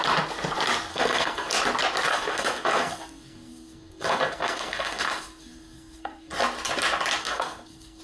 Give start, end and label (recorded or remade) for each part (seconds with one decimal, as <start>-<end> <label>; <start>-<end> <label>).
0.0-0.9 recorded; 0.9-1.5 remade; 1.5-2.1 recorded; 2.1-6.3 remade; 6.3-7.2 recorded; 7.2-8.0 remade